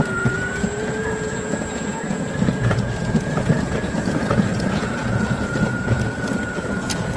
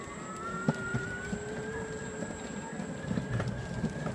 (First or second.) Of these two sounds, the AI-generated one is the first